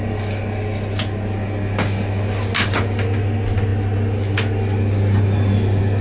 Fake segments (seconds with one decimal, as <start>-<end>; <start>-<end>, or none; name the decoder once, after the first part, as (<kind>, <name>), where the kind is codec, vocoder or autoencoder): none

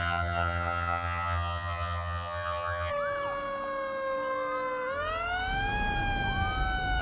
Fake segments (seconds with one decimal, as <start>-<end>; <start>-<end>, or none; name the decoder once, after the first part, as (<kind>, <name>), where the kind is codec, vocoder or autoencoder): 0.0-2.9 (vocoder, HiFi-GAN)